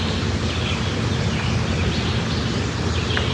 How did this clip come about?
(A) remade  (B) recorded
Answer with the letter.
B